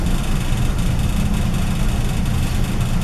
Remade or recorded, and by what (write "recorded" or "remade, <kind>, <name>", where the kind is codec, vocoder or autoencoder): recorded